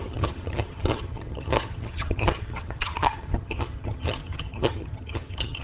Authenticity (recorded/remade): remade